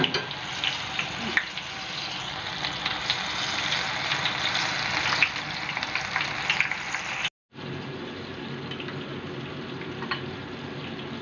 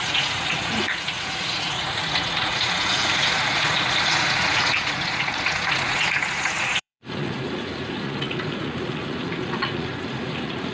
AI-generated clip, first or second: second